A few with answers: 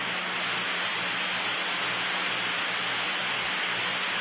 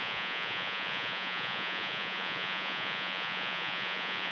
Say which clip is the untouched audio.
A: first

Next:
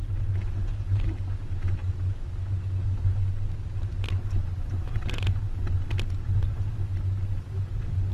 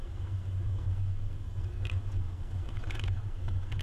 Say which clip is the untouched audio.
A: first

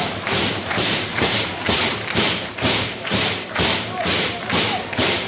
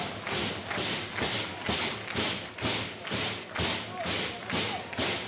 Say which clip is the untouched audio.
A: second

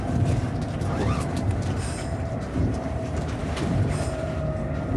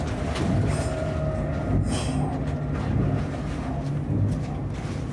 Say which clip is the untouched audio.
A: second